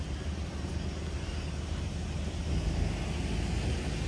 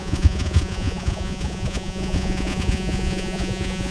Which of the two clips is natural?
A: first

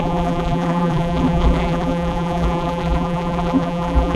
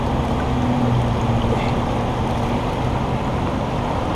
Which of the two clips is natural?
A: second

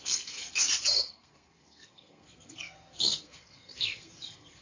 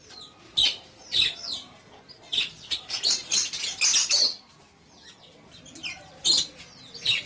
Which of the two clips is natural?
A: second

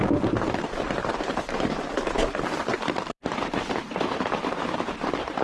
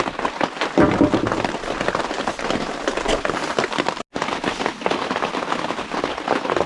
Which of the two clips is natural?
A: second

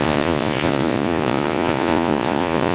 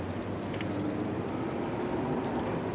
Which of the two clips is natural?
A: second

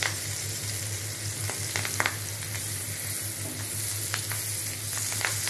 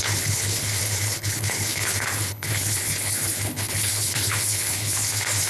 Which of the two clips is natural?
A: first